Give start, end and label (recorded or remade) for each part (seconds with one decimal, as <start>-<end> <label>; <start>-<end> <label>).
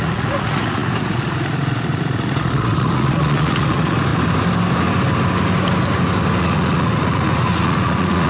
0.0-4.1 remade; 4.1-6.4 recorded; 6.4-8.3 remade